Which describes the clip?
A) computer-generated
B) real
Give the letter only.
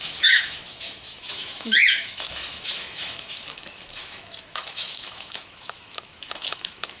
A